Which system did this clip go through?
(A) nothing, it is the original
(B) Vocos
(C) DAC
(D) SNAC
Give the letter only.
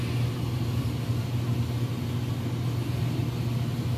A